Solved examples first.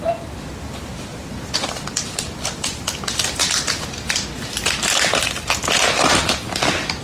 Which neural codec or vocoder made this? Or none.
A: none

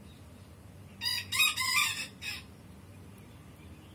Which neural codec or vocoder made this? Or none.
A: none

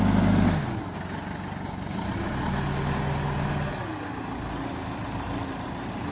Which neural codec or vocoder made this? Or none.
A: none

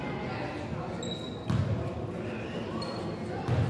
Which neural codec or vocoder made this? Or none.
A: none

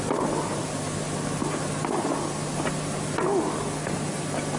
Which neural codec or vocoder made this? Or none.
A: none